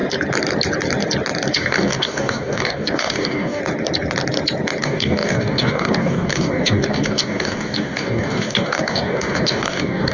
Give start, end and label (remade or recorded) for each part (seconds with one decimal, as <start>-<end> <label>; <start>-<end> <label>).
0.0-1.5 recorded; 1.5-3.6 remade; 3.6-4.8 recorded; 4.8-10.1 remade